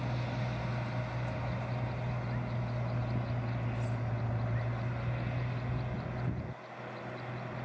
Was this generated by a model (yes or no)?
no